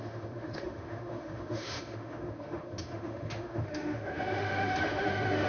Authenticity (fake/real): fake